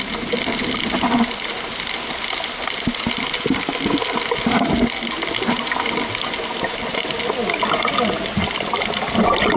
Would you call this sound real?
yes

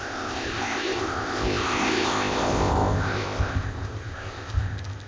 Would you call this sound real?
no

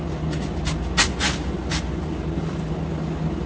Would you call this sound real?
yes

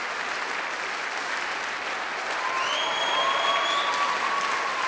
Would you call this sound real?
yes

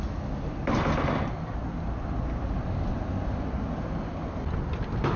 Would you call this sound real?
yes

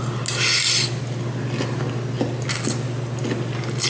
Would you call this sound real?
yes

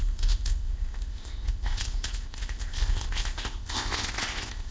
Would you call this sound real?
no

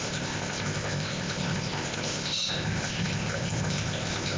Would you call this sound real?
no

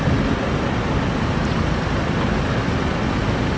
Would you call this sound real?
yes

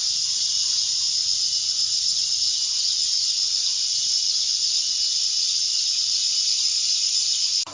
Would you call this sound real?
yes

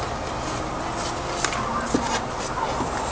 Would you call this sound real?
yes